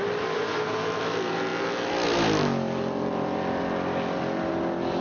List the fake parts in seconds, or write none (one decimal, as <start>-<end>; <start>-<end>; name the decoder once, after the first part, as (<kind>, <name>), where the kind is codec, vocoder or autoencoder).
none